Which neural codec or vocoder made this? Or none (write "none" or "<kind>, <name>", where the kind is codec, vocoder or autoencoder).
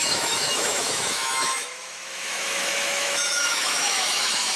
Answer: autoencoder, DAC-VAE